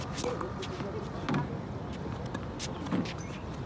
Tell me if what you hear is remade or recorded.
recorded